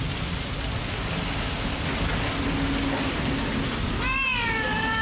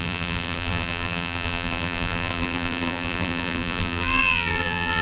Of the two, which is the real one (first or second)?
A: first